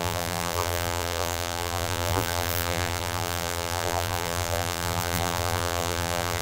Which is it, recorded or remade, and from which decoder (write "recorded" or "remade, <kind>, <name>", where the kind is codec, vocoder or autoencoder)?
remade, vocoder, BigVGAN v2